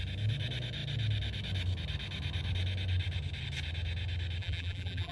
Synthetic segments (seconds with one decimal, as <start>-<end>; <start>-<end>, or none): 4.4-5.1